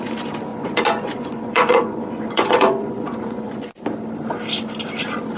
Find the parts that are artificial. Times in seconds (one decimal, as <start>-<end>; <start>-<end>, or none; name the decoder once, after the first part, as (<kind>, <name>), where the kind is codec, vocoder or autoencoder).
0.5-3.7 (vocoder, Vocos)